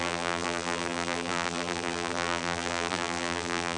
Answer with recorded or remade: remade